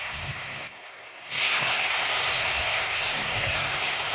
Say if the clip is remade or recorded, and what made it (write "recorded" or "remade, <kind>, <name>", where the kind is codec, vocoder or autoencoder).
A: remade, codec, SNAC